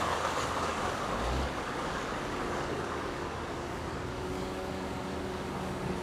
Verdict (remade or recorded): remade